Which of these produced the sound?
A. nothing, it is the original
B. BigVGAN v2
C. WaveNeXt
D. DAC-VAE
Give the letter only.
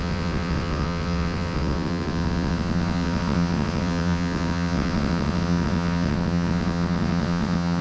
C